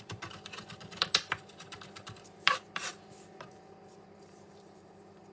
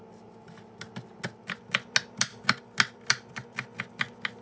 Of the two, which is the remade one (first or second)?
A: first